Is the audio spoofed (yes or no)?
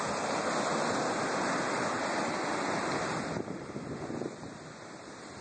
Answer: no